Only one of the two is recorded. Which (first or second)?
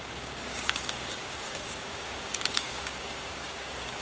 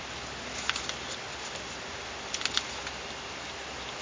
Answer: second